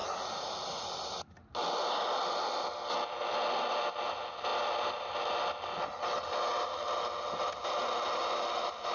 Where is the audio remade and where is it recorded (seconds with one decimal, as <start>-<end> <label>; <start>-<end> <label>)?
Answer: 0.0-8.9 recorded